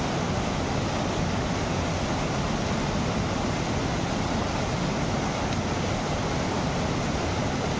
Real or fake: real